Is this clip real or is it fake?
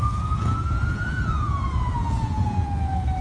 fake